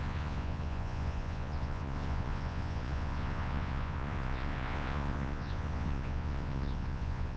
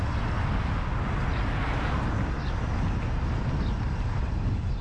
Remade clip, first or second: first